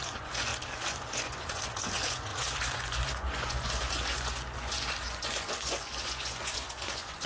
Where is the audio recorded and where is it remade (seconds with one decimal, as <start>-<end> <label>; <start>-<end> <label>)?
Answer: 0.0-7.3 remade